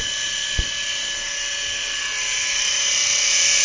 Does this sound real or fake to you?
real